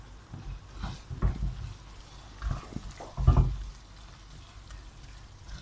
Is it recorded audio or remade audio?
recorded